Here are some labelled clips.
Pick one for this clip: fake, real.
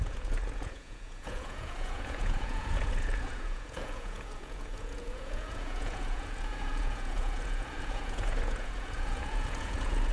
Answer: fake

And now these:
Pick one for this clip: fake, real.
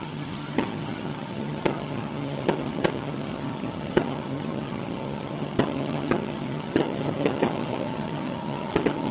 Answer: fake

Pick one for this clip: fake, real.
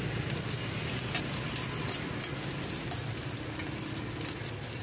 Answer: real